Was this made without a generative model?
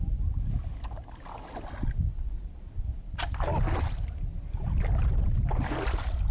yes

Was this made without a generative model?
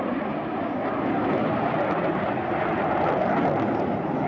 yes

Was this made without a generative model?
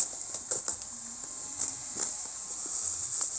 yes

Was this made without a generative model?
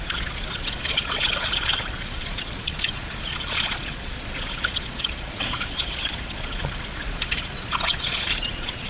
no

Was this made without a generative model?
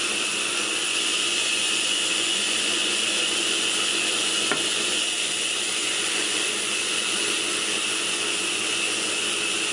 no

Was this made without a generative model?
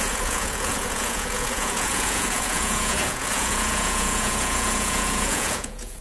no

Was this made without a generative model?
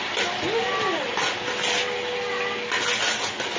yes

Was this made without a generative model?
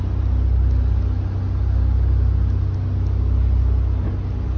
yes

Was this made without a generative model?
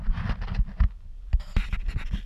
yes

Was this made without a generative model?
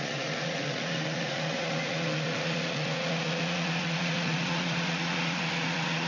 no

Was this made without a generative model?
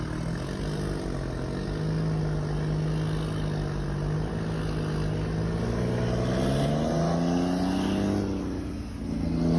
yes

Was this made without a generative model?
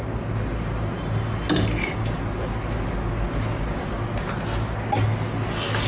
yes